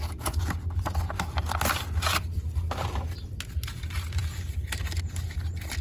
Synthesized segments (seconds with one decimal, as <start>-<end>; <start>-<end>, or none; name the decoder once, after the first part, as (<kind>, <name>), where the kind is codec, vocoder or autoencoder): none